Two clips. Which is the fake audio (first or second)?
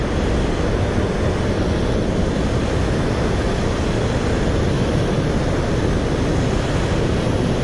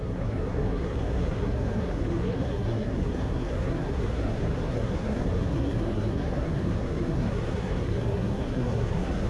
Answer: second